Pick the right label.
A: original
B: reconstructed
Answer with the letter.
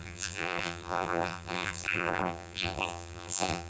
B